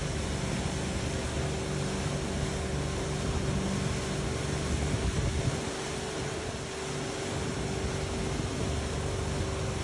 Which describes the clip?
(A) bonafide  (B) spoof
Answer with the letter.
A